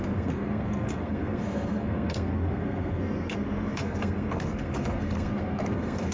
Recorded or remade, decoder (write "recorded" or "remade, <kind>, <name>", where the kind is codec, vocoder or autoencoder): remade, codec, SNAC